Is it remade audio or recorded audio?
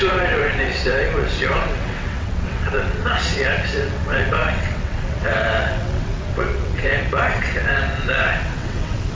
remade